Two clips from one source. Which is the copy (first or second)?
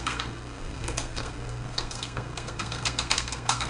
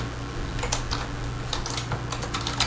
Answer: first